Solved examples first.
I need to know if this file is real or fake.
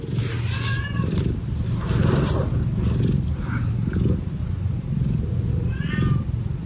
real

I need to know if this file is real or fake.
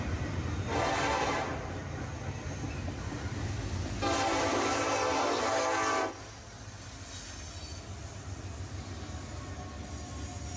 real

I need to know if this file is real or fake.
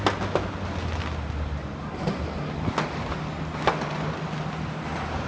real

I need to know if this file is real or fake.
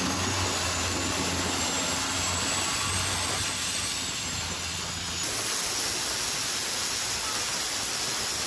real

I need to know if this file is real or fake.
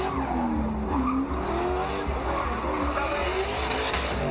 real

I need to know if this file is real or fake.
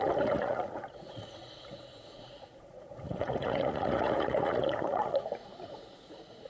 fake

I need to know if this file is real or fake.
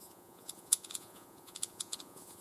fake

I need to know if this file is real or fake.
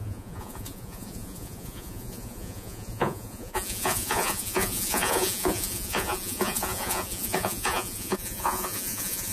fake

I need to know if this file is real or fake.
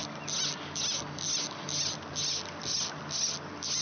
real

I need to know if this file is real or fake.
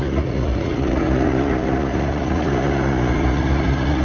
fake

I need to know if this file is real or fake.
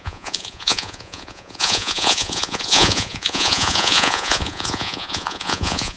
fake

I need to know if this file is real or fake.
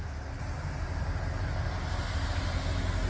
real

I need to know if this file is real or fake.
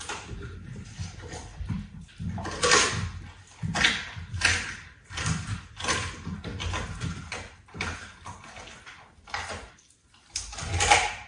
real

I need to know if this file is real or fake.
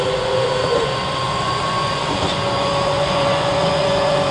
fake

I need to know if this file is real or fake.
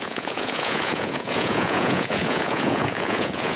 fake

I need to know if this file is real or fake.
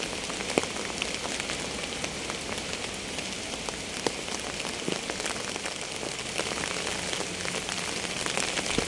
real